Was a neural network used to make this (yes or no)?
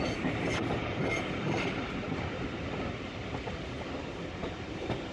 no